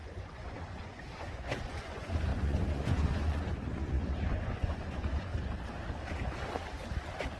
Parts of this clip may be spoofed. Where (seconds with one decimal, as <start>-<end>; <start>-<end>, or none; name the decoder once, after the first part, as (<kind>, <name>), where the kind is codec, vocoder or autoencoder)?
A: 0.0-5.3 (vocoder, Vocos)